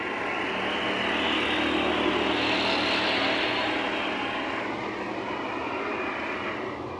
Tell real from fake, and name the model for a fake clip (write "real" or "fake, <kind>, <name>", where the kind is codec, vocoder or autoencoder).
real